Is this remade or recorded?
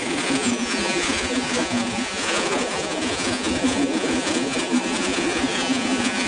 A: remade